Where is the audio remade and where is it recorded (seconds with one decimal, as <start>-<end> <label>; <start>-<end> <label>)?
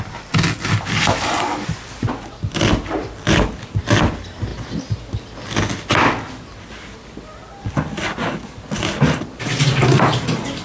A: 0.0-10.6 recorded